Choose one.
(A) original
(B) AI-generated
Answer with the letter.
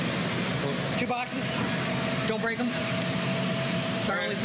A